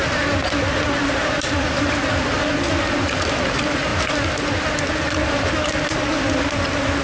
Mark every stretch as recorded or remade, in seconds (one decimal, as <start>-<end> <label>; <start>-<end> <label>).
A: 0.0-7.0 recorded